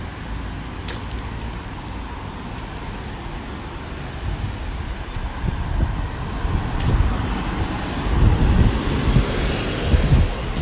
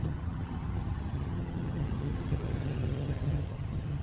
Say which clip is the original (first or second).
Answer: first